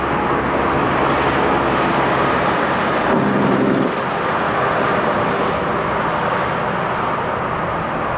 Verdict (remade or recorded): recorded